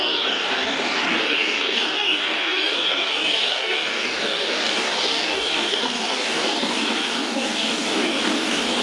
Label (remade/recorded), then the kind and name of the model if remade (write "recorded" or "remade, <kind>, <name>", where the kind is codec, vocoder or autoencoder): remade, codec, DAC